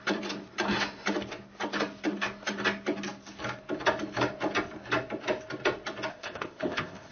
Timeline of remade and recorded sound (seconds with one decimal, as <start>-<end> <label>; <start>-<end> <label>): 0.0-6.1 recorded; 6.1-7.1 remade